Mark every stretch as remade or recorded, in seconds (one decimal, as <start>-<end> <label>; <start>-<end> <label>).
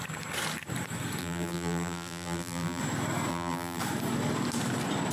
0.0-1.2 recorded; 1.2-2.8 remade; 2.8-3.3 recorded; 3.3-3.8 remade; 3.8-5.1 recorded